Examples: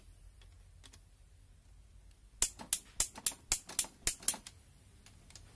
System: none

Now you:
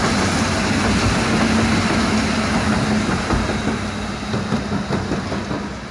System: none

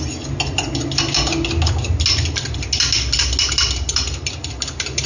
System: none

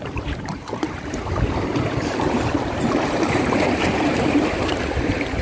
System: vocoder, BigVGAN v2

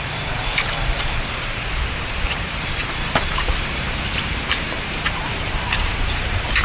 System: vocoder, BigVGAN v2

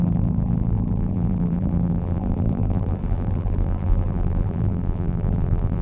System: vocoder, BigVGAN v2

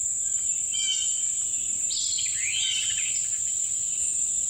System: none